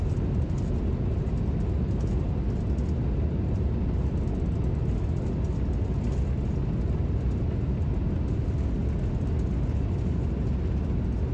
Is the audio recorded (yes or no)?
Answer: yes